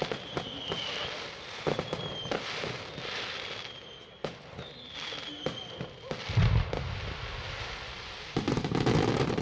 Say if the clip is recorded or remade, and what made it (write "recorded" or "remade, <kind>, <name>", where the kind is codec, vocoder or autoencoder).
recorded